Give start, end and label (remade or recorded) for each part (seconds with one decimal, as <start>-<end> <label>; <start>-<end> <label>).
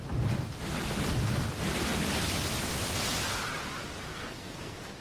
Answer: 0.0-4.1 recorded; 4.1-5.0 remade